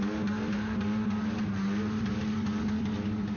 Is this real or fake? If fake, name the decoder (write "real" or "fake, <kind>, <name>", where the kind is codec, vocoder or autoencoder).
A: real